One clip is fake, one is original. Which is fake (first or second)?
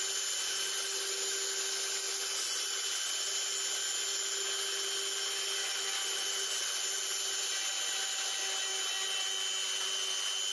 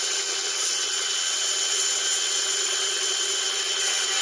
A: second